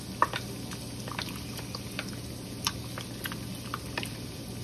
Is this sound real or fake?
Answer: real